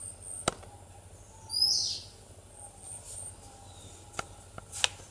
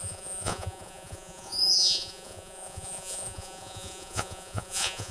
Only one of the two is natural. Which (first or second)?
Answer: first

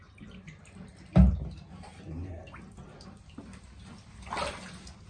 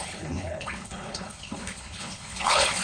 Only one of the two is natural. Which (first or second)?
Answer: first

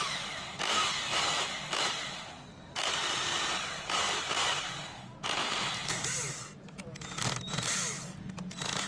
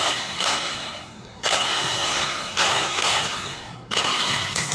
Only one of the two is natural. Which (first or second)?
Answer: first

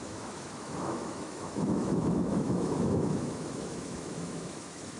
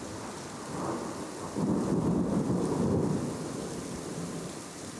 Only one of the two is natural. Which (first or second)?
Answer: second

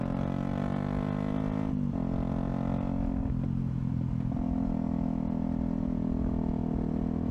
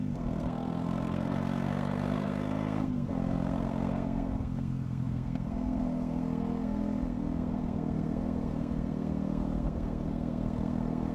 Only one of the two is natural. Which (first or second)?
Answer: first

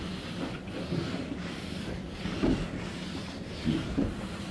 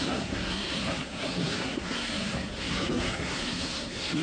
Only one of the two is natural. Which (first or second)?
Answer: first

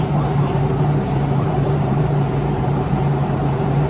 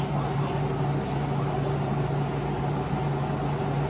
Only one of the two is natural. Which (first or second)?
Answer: second